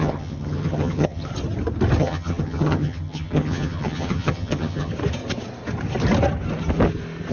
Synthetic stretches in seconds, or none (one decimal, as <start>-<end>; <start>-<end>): 0.0-1.3; 2.0-4.9